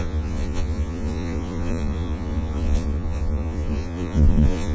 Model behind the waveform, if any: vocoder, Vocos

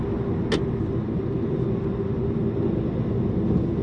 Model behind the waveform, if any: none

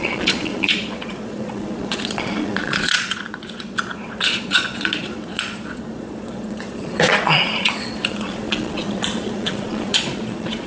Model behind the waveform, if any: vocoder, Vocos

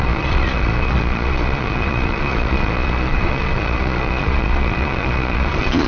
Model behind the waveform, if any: vocoder, Vocos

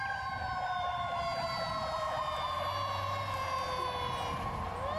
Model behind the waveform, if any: none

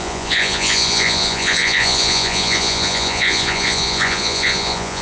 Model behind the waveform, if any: vocoder, Vocos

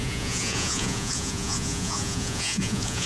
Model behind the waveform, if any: vocoder, Vocos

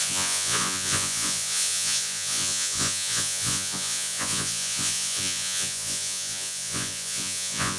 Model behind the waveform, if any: vocoder, Vocos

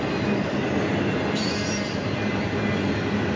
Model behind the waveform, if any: none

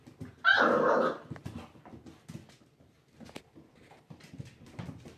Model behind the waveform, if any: none